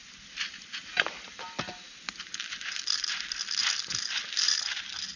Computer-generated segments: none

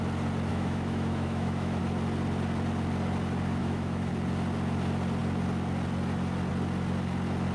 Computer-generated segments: 0.5-1.8 (autoencoder, DAC-VAE); 3.6-4.1

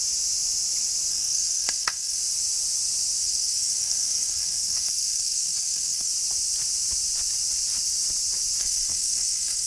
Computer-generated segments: 1.1-2.2 (codec, SNAC); 3.2-6.1; 8.6-9.7

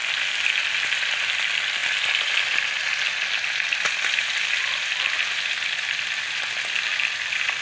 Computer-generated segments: none

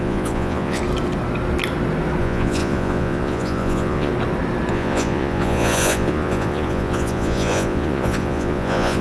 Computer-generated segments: 0.0-0.8 (vocoder, Vocos); 2.2-4.1; 4.7-9.0

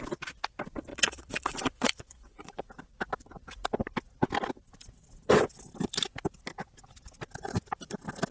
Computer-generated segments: 0.9-2.6 (vocoder, Vocos)

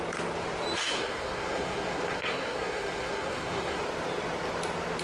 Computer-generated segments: 0.8-3.8 (codec, SNAC)